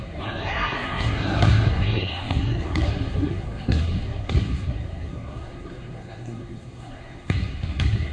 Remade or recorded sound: remade